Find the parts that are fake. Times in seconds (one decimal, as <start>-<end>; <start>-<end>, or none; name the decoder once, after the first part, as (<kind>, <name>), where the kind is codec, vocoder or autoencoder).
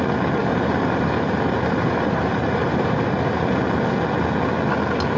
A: 0.4-3.5 (vocoder, BigVGAN v2)